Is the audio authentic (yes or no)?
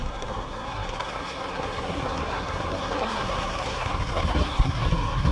no